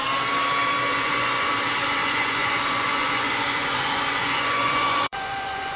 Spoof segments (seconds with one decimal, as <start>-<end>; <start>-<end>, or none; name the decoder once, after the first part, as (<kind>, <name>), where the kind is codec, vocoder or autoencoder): 0.9-1.5 (vocoder, Vocos); 2.0-5.8